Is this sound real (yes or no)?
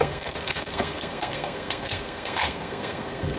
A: no